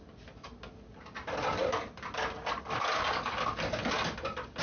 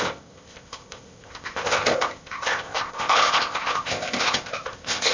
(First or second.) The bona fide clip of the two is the first